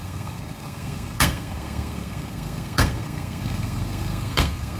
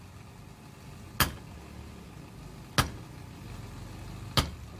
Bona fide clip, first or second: second